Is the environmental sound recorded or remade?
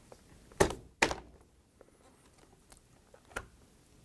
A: recorded